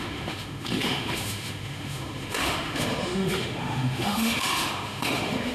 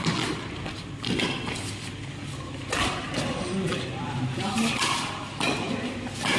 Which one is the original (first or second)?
second